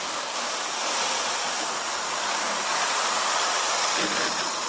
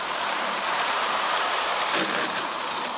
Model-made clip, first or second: second